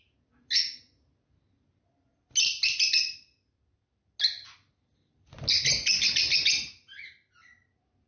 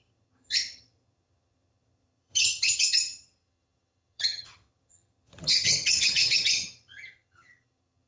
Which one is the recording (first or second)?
first